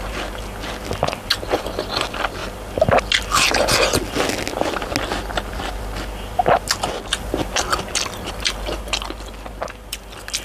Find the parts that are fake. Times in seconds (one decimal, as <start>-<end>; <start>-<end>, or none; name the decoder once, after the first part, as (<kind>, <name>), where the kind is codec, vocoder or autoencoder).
none